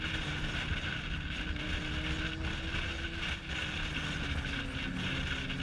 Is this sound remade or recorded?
recorded